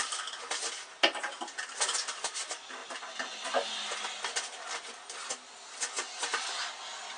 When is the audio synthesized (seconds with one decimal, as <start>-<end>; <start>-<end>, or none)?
none